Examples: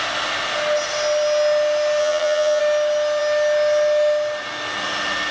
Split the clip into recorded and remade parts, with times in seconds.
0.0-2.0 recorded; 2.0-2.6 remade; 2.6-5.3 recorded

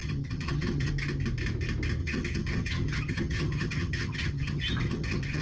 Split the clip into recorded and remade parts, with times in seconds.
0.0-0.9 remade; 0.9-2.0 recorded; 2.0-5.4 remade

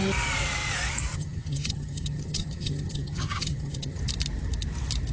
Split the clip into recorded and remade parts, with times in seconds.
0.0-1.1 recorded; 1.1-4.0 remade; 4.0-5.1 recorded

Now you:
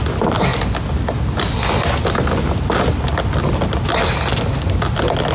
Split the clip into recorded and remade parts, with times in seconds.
0.0-5.3 recorded

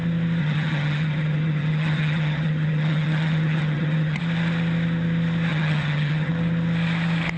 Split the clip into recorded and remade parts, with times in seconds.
0.0-0.4 recorded; 0.4-4.2 remade; 4.2-5.5 recorded; 5.5-6.3 remade; 6.3-7.4 recorded

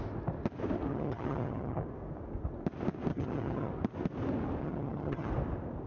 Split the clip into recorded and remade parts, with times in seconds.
0.0-0.9 recorded; 0.9-1.8 remade; 1.8-3.1 recorded; 3.1-3.7 remade; 3.7-4.6 recorded; 4.6-5.3 remade; 5.3-5.9 recorded

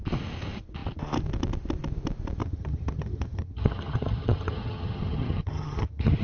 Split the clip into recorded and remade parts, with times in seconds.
0.0-2.4 recorded; 2.4-6.2 remade